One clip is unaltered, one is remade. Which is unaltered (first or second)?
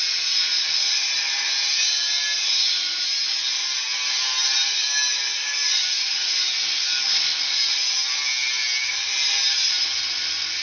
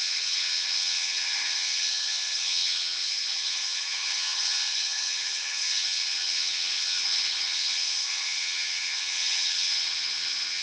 first